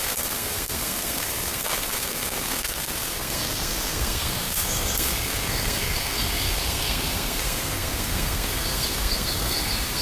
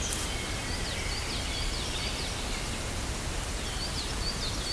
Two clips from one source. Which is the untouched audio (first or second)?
second